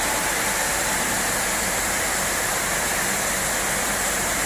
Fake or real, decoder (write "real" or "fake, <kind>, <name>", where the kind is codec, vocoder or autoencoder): fake, vocoder, BigVGAN v2